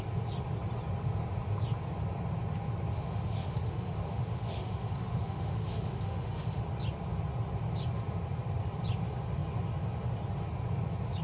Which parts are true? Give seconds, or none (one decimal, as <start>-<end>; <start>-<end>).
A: 0.0-2.9; 6.6-11.2